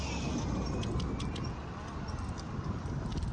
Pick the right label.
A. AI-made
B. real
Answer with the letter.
B